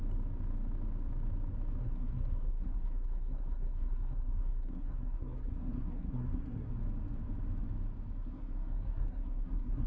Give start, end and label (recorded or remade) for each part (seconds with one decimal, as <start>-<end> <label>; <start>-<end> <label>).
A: 0.0-1.8 recorded; 1.8-6.7 remade; 6.7-8.2 recorded; 8.2-9.9 remade